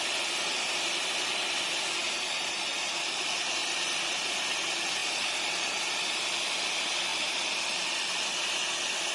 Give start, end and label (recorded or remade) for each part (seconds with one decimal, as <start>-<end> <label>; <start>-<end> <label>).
0.0-3.6 recorded; 3.6-4.3 remade; 4.3-5.0 recorded; 5.0-5.8 remade; 5.8-7.1 recorded; 7.1-8.2 remade; 8.2-9.1 recorded